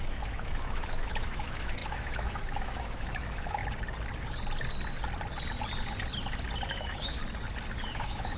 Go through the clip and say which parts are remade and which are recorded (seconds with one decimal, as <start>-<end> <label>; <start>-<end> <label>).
0.0-3.6 remade; 3.6-6.7 recorded; 6.7-7.2 remade; 7.2-7.8 recorded; 7.8-8.4 remade